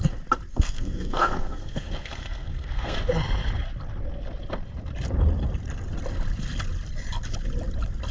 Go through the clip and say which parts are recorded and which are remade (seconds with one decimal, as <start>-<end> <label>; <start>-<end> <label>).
0.0-0.5 recorded; 0.5-3.0 remade; 3.0-8.1 recorded